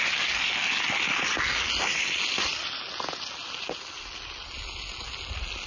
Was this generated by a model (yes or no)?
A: no